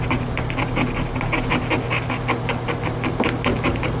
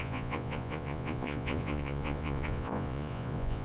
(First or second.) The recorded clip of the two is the first